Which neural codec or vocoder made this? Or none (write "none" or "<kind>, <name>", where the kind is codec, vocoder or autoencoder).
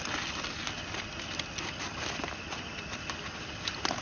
none